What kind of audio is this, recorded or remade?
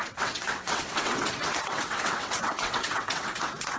remade